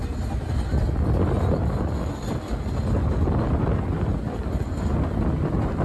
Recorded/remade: recorded